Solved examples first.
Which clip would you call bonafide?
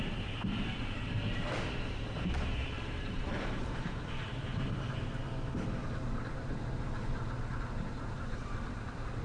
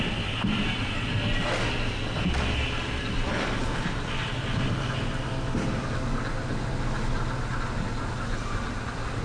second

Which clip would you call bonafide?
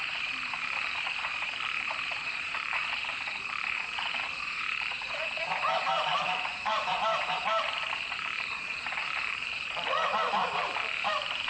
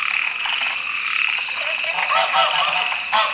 second